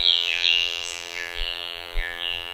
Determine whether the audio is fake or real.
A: fake